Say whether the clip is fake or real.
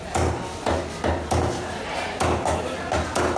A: real